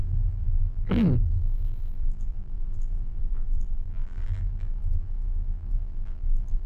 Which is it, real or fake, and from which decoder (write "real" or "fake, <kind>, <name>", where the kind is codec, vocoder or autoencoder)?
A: fake, vocoder, BigVGAN v2